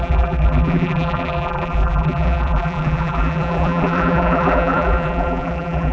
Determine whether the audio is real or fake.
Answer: fake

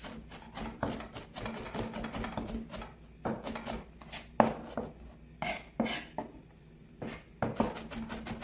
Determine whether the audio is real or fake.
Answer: real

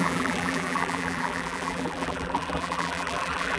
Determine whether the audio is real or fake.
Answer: fake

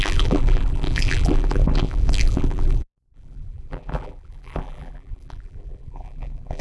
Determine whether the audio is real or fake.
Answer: fake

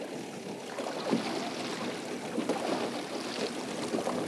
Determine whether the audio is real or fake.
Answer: real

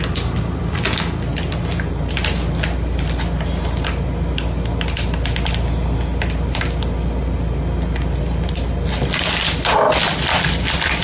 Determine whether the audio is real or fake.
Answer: real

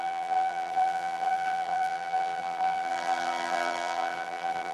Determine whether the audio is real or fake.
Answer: fake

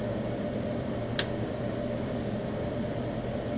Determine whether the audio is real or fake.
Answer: fake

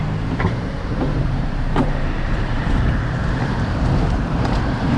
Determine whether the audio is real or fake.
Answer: fake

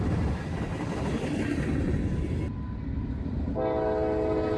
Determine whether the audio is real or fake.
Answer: real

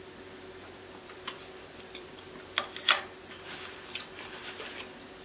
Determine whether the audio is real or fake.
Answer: fake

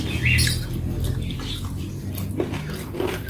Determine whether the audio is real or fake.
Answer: real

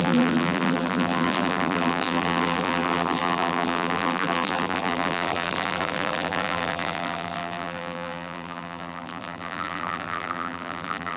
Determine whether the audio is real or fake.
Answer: fake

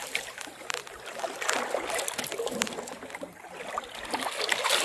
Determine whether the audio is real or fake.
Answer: fake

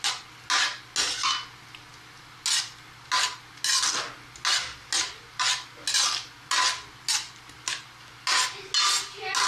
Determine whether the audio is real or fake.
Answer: real